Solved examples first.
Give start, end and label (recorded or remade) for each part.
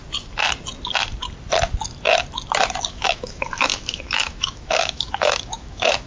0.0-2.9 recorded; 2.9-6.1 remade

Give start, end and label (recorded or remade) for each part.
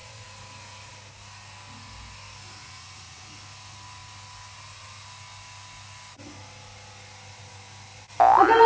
0.0-2.6 recorded; 2.6-3.2 remade; 3.2-8.7 recorded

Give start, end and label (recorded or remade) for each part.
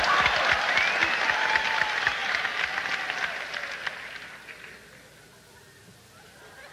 0.0-6.7 recorded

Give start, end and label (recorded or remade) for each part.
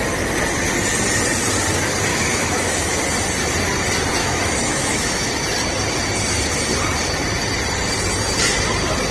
0.0-2.1 recorded; 2.1-3.0 remade; 3.0-4.2 recorded; 4.2-5.3 remade; 5.3-9.1 recorded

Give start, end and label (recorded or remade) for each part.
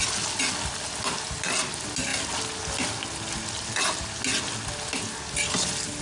0.0-6.0 recorded